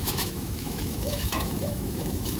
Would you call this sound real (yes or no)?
no